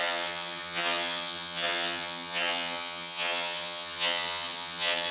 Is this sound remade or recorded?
remade